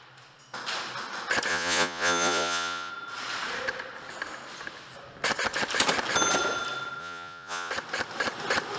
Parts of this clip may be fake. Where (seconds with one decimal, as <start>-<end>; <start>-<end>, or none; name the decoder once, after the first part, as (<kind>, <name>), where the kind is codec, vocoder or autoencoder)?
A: 1.5-2.9 (vocoder, Vocos); 7.0-7.7